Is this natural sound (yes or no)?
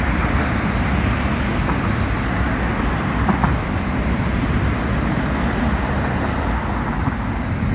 yes